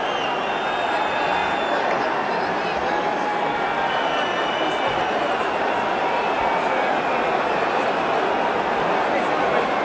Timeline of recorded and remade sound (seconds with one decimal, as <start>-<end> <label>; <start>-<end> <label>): 0.0-9.8 recorded